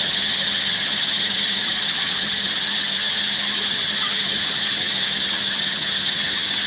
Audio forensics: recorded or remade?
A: remade